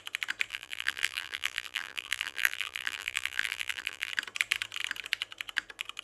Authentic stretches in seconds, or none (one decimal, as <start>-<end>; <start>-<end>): 0.0-0.5; 4.1-6.0